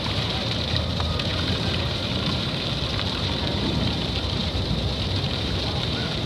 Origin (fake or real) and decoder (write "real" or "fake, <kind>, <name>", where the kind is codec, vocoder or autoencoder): fake, vocoder, BigVGAN v2